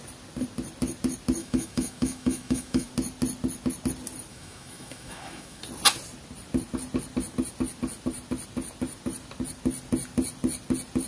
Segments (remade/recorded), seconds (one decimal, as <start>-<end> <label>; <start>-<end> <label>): 0.0-1.4 recorded; 1.4-2.9 remade; 2.9-4.3 recorded; 4.3-5.6 remade; 5.6-11.1 recorded